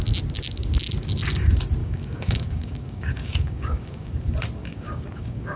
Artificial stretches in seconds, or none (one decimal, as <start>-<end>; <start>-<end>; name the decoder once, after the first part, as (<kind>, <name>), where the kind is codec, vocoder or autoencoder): 1.8-4.1 (codec, DAC); 4.6-5.6